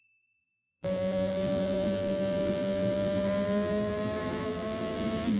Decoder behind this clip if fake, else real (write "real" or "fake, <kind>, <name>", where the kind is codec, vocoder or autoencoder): fake, vocoder, BigVGAN v2